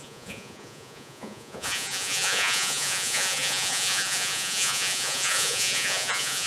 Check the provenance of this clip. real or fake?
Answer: fake